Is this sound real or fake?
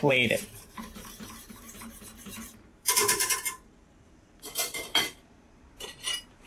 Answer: fake